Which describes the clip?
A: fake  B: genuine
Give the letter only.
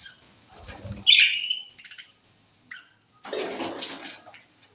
B